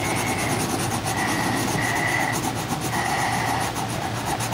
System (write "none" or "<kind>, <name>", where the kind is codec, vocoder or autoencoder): none